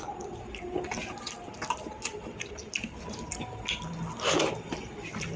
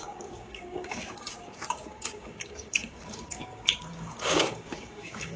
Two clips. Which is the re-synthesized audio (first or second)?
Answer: second